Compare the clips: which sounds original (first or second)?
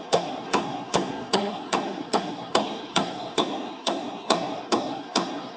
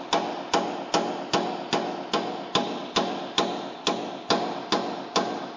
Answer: second